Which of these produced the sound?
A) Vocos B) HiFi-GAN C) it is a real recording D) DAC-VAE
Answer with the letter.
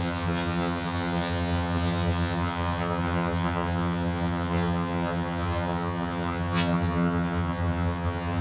B